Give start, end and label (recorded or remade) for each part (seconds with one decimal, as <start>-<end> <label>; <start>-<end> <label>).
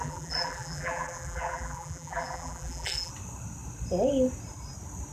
0.0-3.1 remade; 3.1-5.1 recorded